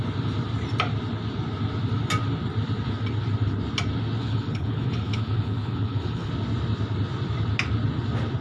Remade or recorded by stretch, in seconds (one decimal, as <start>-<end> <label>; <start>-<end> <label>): 0.0-4.2 recorded; 4.2-6.3 remade; 6.3-8.4 recorded